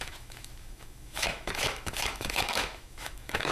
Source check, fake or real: fake